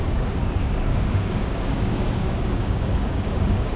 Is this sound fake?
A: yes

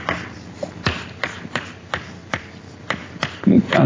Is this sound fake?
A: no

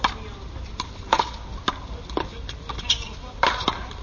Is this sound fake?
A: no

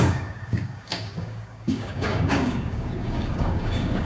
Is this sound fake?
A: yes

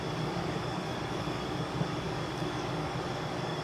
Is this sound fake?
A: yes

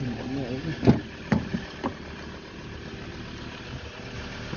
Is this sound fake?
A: no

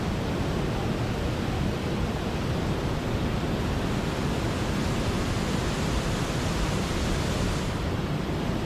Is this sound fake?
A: no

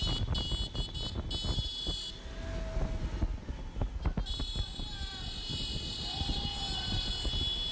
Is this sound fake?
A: no